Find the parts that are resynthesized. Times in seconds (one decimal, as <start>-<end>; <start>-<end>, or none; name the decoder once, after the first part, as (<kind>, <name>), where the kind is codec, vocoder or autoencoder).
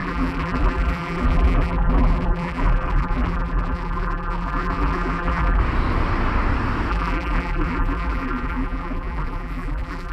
0.0-5.6 (vocoder, BigVGAN v2); 6.9-10.1